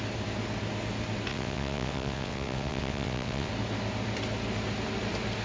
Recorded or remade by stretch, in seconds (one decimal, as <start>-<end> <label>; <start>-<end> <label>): 0.0-1.3 recorded; 1.3-3.5 remade; 3.5-5.4 recorded